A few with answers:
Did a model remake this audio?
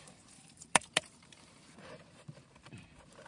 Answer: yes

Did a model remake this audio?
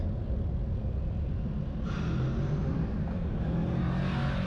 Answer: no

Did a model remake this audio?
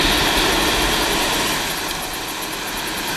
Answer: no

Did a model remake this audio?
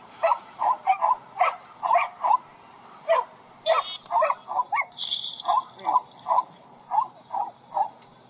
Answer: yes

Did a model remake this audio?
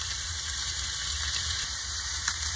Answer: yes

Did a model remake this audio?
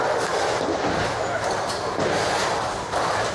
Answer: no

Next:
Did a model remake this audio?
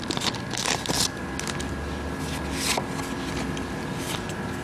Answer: no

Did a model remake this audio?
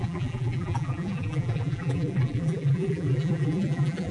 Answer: yes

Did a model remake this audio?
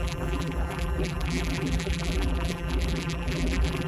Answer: yes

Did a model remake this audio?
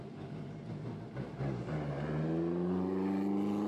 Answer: no